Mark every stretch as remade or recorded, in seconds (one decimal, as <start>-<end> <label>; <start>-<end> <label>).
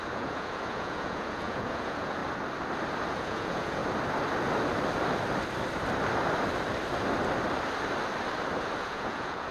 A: 0.0-2.2 remade; 2.2-3.1 recorded; 3.1-3.8 remade; 3.8-8.8 recorded; 8.8-9.5 remade